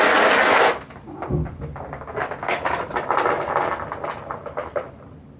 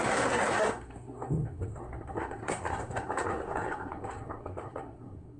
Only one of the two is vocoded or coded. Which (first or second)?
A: second